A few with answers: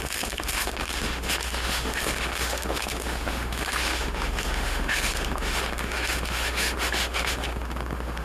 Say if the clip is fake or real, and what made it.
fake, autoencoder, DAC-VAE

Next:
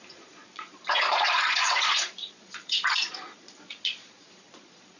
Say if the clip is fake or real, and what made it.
fake, vocoder, Vocos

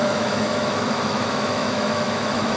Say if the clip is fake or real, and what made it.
fake, autoencoder, DAC-VAE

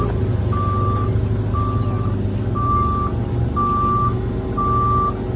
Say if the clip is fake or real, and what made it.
real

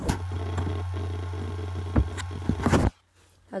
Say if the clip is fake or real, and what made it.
real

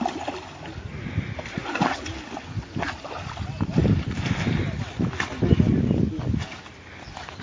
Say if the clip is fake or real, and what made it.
real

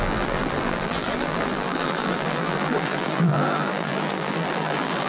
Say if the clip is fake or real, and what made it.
fake, vocoder, BigVGAN v2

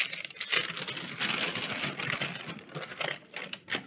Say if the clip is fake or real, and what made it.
real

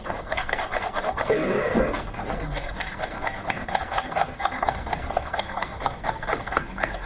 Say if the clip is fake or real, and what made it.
fake, codec, SNAC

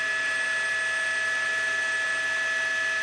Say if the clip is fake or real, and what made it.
real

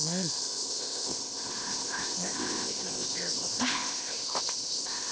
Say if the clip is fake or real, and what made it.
fake, codec, ZipCodec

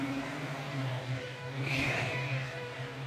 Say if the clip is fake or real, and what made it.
fake, codec, DAC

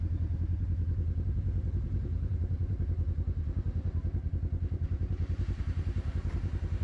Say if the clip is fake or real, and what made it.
fake, vocoder, BigVGAN v2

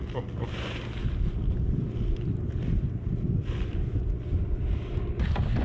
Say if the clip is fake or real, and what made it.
real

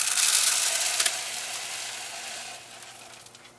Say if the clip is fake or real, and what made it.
real